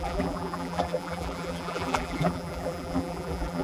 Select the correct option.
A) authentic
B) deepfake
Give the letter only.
B